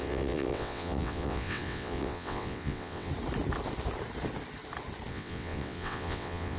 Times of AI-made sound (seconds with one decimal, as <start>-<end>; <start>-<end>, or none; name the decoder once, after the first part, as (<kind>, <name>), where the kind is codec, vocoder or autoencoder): 0.0-3.1 (vocoder, WaveNeXt); 5.1-6.6